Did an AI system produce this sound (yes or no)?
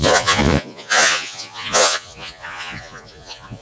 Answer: yes